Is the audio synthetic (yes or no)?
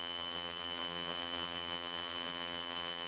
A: yes